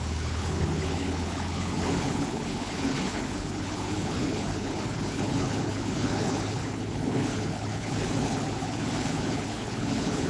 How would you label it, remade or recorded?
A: remade